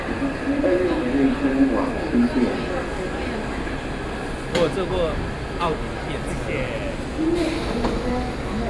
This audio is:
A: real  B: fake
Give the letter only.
A